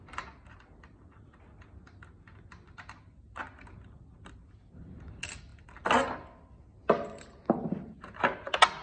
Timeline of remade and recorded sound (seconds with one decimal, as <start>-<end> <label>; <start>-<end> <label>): 0.0-8.8 recorded